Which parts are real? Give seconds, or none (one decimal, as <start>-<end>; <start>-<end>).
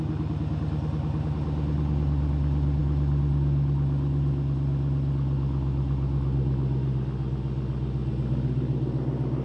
0.0-9.4